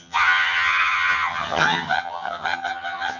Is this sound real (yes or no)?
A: no